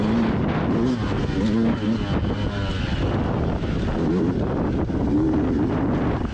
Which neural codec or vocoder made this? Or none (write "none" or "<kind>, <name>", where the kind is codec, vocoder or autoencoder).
none